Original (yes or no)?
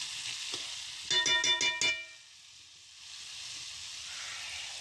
yes